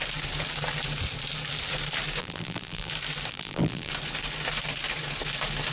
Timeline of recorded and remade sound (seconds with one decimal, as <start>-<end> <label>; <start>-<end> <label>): 0.0-2.2 recorded; 2.2-2.9 remade; 2.9-3.3 recorded; 3.3-3.9 remade; 3.9-5.7 recorded